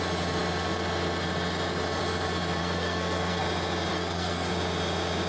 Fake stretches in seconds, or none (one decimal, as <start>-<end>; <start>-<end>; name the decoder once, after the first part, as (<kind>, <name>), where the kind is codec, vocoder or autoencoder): 2.6-3.4 (codec, SNAC); 3.9-4.5